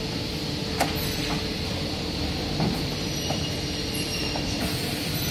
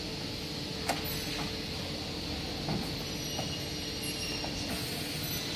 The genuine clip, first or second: second